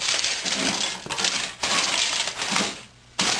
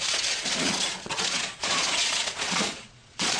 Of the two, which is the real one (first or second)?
first